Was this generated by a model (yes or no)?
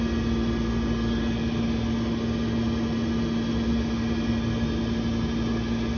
no